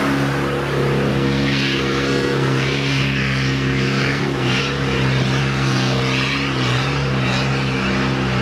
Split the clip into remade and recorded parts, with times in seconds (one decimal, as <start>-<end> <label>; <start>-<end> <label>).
0.0-1.1 recorded; 1.1-4.6 remade; 4.6-5.4 recorded; 5.4-6.0 remade; 6.0-8.4 recorded